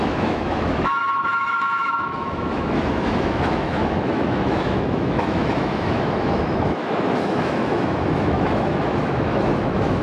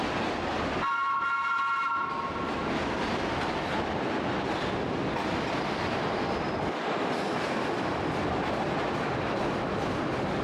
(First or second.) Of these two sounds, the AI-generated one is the first